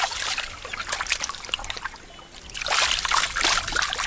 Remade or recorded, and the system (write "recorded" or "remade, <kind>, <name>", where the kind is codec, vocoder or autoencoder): recorded